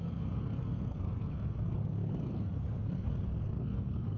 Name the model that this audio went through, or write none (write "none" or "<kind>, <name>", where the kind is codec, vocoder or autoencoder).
codec, SNAC